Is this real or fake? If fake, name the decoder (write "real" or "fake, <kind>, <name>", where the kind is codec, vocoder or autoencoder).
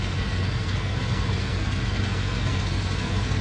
fake, codec, SNAC